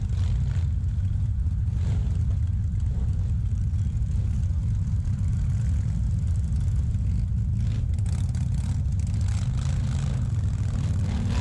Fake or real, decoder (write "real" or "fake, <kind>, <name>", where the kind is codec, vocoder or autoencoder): real